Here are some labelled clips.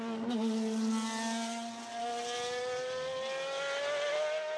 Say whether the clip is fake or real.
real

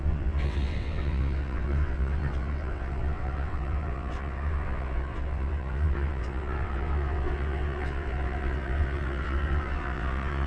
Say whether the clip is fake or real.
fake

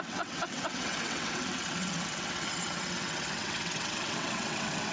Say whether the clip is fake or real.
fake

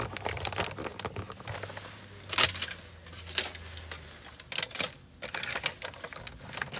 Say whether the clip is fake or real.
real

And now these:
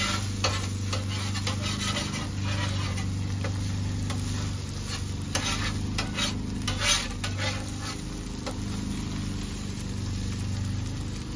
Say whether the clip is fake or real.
real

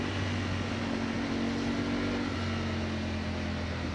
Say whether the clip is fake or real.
real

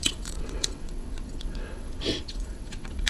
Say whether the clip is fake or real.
fake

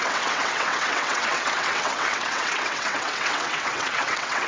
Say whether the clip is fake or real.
fake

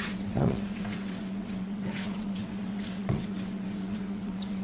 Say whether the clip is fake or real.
fake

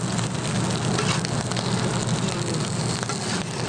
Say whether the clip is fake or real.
real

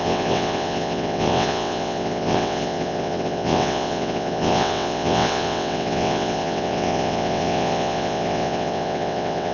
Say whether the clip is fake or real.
fake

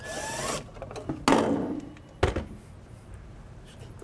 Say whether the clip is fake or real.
real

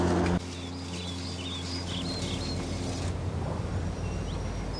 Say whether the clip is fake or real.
real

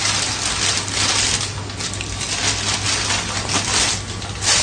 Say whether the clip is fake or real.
real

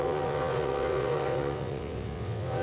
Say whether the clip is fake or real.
fake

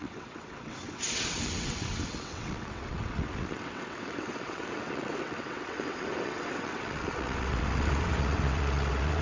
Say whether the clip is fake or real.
fake